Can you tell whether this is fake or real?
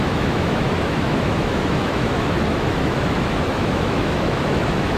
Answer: fake